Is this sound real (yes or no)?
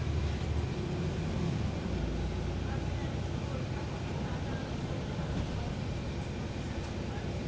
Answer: yes